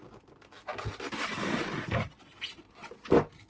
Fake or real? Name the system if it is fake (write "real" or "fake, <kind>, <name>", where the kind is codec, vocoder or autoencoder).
real